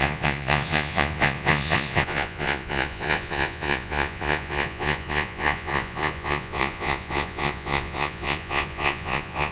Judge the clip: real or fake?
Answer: fake